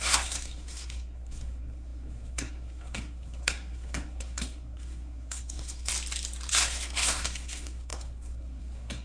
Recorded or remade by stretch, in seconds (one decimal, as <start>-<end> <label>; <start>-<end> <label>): 0.0-5.9 remade; 5.9-6.5 recorded; 6.5-9.0 remade